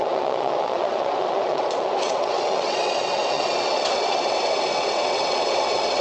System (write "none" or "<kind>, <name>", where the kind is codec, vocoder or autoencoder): vocoder, WaveNeXt